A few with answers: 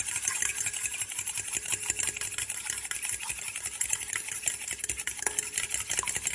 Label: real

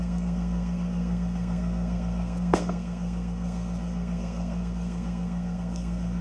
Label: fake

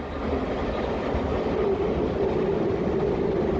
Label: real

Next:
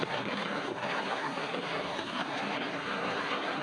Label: fake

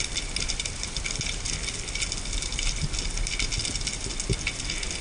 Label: real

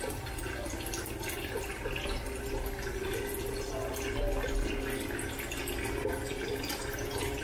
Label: real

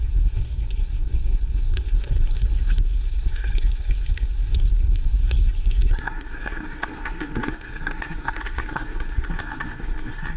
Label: fake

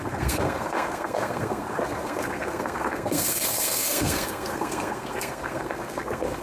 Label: fake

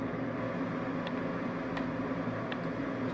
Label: real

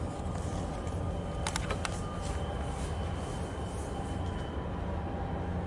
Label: real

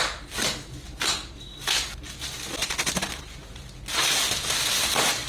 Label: real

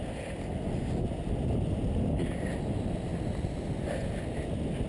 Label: real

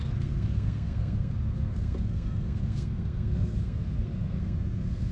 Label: fake